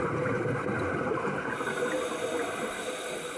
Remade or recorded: recorded